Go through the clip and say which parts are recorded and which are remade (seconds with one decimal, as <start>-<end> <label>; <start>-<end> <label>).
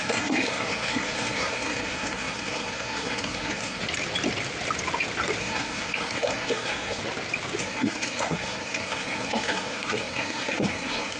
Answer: 0.0-3.8 remade; 3.8-5.4 recorded; 5.4-7.0 remade; 7.0-7.6 recorded; 7.6-11.2 remade